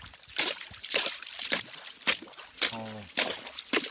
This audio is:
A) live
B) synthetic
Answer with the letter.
A